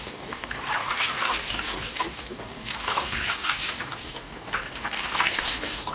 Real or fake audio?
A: fake